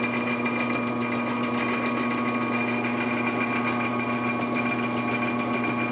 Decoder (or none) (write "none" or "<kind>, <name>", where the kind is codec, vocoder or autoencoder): none